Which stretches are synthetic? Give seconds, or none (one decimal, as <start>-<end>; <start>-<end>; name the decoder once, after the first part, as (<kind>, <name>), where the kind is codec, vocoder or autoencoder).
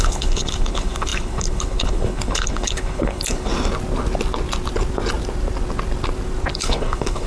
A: 0.0-3.5 (codec, HILCodec); 6.5-7.3